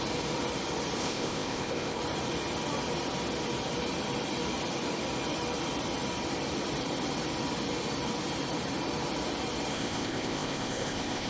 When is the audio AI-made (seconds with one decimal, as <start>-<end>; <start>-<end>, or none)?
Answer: 1.0-2.0; 9.7-11.3

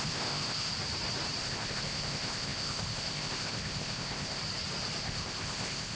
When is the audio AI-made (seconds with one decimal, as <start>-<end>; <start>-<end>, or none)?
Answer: 0.0-0.7; 1.4-4.4; 5.0-6.0

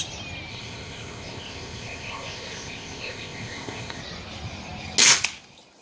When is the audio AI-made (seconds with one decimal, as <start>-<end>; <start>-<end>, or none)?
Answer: 0.5-4.0

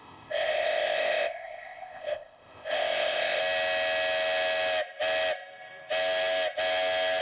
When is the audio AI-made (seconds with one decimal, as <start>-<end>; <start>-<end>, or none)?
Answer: 0.0-3.4

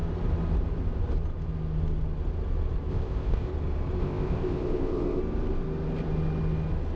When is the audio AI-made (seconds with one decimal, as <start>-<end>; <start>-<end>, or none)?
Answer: 2.9-3.5; 4.0-5.2

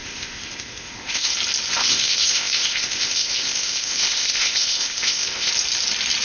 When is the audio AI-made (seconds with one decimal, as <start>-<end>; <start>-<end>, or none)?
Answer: 0.0-1.3; 1.8-5.5